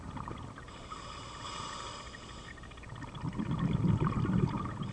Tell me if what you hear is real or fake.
real